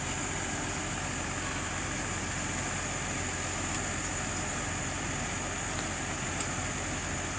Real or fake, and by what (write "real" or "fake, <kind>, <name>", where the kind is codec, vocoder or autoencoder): real